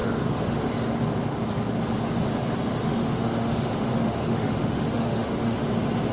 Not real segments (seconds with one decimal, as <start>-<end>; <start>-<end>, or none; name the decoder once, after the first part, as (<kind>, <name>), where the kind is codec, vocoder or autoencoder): 0.0-0.7 (autoencoder, DAC-VAE); 2.7-5.6

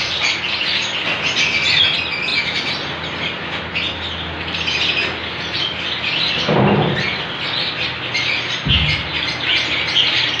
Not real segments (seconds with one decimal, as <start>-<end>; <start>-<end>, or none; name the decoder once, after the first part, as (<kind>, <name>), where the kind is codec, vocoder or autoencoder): none

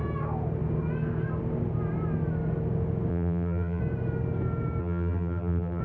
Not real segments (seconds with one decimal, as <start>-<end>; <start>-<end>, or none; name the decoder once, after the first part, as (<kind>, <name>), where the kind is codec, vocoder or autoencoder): 3.1-3.8 (vocoder, BigVGAN v2); 4.8-5.8

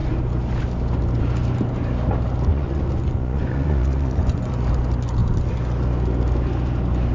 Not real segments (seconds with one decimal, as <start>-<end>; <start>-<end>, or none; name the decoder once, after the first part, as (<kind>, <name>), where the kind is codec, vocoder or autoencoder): 2.5-4.5 (vocoder, Vocos)

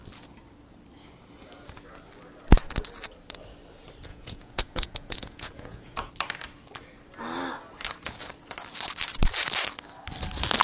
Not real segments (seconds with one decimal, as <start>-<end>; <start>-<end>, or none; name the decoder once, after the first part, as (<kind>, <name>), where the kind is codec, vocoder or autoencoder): 4.1-6.1 (vocoder, Vocos)

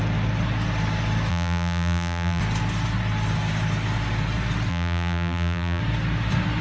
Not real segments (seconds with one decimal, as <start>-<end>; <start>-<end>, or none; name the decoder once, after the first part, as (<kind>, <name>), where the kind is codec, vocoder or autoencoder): 1.3-2.4 (vocoder, BigVGAN v2); 4.7-5.8